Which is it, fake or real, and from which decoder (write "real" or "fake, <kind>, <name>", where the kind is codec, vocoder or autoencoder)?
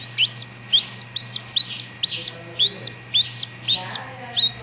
real